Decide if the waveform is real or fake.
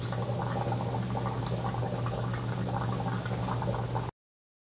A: real